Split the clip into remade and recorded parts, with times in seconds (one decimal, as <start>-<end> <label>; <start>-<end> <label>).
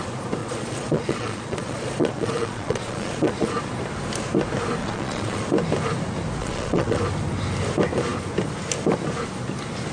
0.0-0.4 recorded; 0.4-3.5 remade; 3.5-4.8 recorded; 4.8-5.4 remade; 5.4-6.4 recorded; 6.4-7.0 remade; 7.0-9.9 recorded